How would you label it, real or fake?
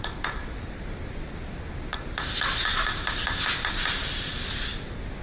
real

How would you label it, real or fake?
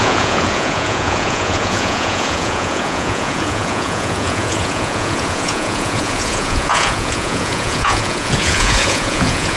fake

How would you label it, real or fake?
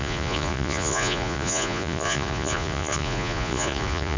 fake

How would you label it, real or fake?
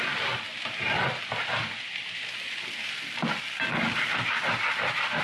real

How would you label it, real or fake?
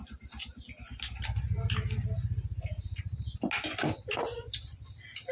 real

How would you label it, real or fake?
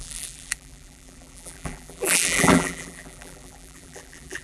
fake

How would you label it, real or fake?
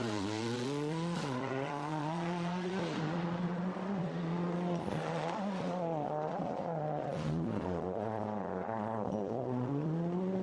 fake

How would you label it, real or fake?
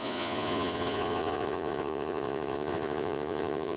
fake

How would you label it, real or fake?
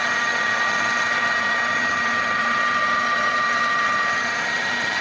fake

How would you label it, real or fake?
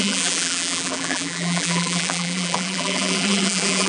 fake